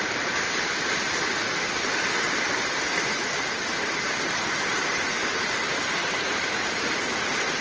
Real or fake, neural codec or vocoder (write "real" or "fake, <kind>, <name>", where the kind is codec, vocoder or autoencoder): real